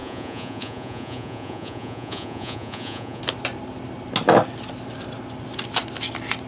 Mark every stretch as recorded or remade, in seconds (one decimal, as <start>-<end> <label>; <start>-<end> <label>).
0.0-3.2 remade; 3.2-6.5 recorded